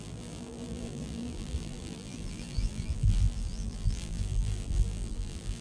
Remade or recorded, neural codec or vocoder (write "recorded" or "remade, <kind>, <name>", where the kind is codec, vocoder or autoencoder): remade, vocoder, BigVGAN v2